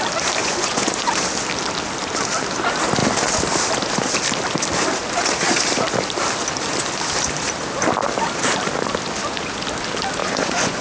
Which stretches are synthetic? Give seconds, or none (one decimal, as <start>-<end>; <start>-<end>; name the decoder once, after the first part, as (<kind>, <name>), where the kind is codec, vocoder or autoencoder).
0.4-1.1 (vocoder, Vocos); 10.2-10.8